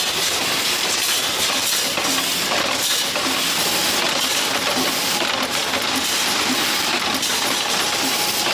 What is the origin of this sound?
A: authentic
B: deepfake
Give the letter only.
B